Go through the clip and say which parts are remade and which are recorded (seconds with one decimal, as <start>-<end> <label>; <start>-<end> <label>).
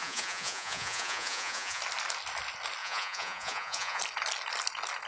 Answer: 0.0-1.8 remade; 1.8-2.8 recorded; 2.8-4.0 remade; 4.0-5.1 recorded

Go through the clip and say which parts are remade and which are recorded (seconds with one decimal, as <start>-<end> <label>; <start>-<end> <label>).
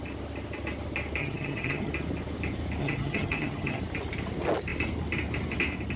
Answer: 0.0-1.2 recorded; 1.2-1.9 remade; 1.9-2.8 recorded; 2.8-3.8 remade; 3.8-6.0 recorded